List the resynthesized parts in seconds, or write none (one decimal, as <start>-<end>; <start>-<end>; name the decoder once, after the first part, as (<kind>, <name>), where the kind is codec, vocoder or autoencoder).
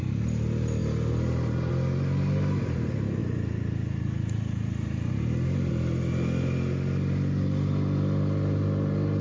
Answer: none